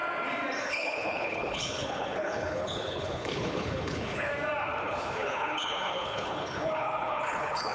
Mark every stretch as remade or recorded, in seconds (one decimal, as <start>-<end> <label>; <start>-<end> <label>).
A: 0.0-0.6 recorded; 0.6-4.3 remade; 4.3-4.8 recorded; 4.8-7.7 remade